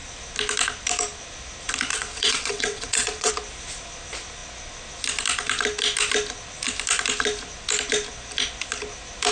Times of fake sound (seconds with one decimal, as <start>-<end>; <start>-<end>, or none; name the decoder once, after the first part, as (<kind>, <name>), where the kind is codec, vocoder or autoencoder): 1.9-3.3 (vocoder, WaveNeXt)